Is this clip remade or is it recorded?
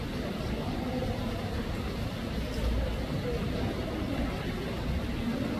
recorded